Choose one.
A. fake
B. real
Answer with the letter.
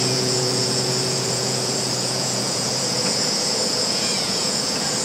A